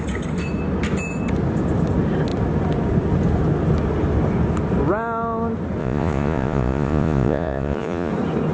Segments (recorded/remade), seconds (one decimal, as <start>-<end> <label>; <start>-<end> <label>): 0.0-5.8 recorded; 5.8-8.1 remade; 8.1-8.5 recorded